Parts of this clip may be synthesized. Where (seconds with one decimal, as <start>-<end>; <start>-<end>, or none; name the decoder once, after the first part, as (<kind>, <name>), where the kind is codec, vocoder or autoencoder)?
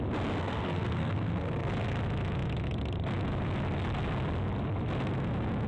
0.4-1.7 (codec, SNAC)